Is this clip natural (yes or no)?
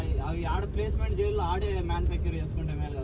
yes